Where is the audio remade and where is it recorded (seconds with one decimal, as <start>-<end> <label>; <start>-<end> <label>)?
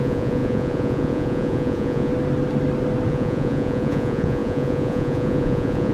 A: 0.0-2.1 remade; 2.1-3.1 recorded; 3.1-5.9 remade